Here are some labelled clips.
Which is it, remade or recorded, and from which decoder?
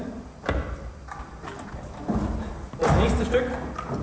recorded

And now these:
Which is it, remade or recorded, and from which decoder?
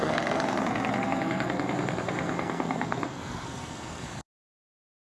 remade, codec, SNAC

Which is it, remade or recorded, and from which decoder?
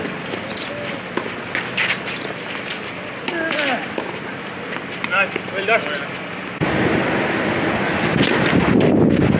recorded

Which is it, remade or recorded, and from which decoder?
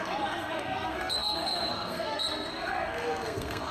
remade, codec, SNAC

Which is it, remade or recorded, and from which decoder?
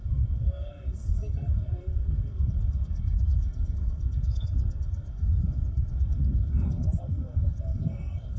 remade, codec, SNAC